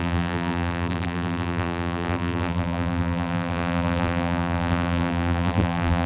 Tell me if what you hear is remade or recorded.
remade